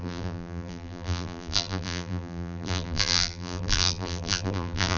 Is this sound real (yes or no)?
no